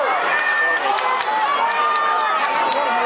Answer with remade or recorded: recorded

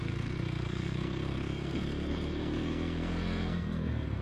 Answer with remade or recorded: remade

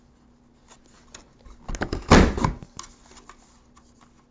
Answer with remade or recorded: recorded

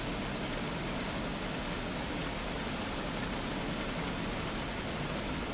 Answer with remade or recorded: recorded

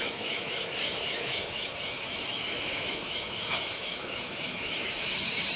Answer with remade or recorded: remade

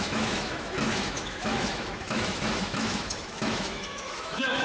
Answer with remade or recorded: remade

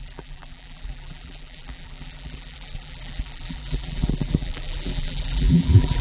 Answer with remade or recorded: remade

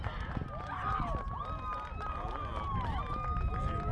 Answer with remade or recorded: recorded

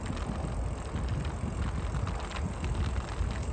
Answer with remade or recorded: recorded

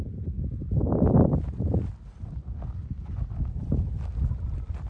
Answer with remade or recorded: recorded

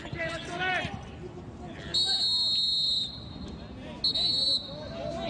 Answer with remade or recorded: recorded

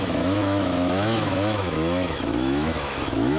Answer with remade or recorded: remade